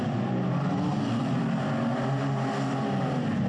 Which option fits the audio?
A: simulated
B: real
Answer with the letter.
B